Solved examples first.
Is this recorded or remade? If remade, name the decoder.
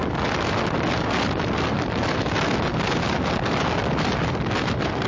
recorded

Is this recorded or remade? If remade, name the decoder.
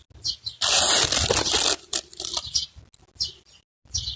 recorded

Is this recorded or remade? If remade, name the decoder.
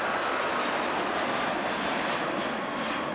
recorded